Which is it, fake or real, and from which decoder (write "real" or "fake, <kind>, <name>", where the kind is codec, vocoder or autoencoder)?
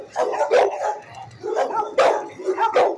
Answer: real